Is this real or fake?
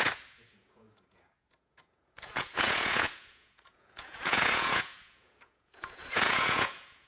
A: fake